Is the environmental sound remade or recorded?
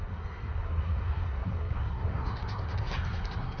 remade